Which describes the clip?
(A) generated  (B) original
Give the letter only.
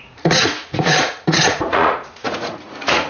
A